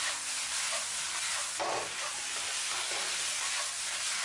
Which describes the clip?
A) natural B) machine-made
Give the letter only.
A